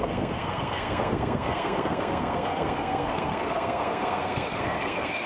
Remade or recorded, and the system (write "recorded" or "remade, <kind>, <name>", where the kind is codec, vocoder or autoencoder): remade, codec, SNAC